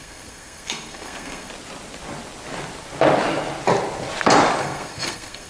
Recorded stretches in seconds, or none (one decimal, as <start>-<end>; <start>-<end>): 1.5-4.6